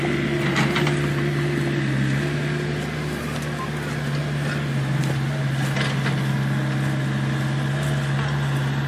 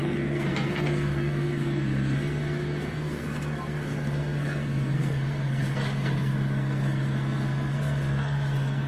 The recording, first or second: first